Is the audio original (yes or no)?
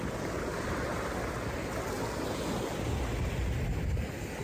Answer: yes